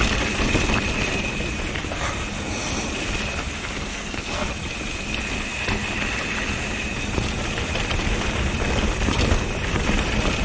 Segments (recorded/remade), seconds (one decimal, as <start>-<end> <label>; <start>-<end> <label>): 0.0-3.9 recorded; 3.9-4.5 remade; 4.5-10.4 recorded